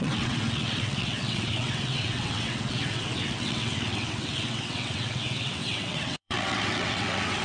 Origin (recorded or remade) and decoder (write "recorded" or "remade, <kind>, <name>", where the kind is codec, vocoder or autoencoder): remade, vocoder, WaveNeXt